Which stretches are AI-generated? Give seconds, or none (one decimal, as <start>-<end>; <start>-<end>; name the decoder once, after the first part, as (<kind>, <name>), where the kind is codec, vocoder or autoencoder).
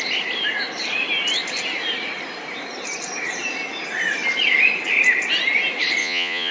6.0-6.5 (vocoder, Vocos)